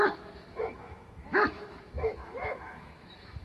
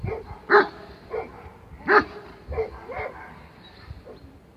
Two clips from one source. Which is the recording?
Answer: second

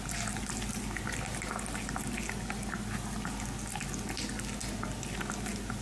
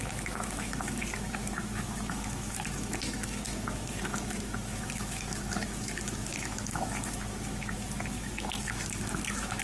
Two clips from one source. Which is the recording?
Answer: first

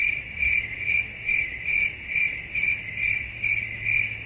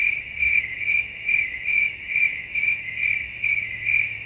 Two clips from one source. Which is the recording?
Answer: first